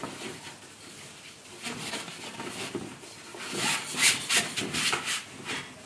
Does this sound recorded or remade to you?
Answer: recorded